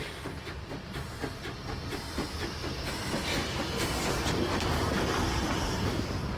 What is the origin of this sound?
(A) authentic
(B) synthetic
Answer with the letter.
A